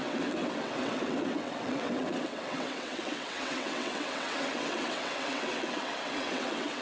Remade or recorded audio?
remade